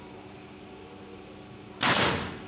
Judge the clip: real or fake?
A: real